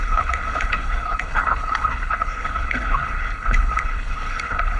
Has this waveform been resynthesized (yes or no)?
yes